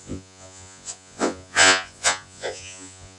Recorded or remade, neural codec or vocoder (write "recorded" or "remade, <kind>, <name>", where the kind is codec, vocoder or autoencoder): remade, vocoder, Vocos